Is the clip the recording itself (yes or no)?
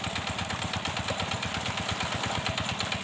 yes